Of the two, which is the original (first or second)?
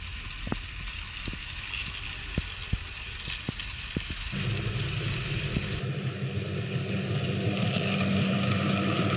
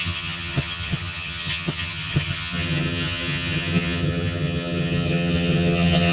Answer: first